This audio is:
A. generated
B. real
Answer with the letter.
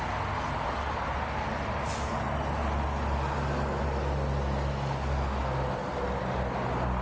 B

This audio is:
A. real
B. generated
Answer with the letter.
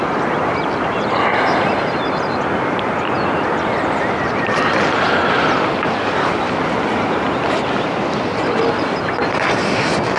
A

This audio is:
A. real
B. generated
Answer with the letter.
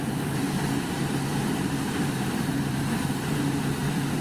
B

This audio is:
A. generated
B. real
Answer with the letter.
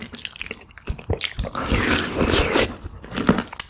B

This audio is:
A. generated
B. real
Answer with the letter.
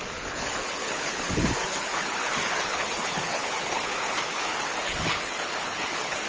A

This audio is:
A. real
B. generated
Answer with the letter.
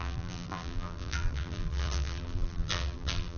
B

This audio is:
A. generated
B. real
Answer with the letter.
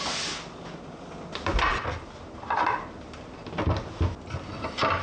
B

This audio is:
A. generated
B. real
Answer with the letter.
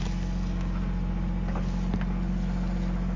B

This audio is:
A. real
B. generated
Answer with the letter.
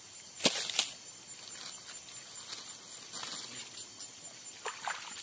A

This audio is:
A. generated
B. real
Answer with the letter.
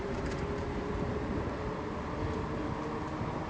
B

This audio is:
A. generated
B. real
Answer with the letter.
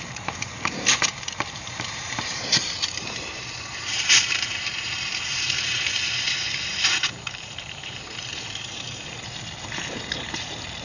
A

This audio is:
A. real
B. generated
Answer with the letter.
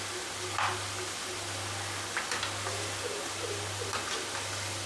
A